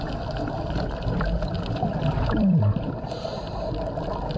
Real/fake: fake